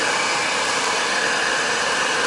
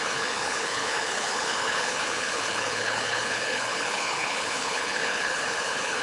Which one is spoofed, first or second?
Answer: second